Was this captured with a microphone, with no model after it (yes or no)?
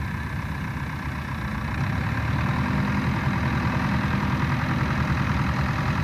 yes